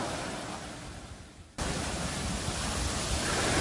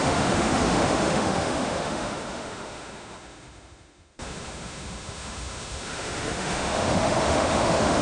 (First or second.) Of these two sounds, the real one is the first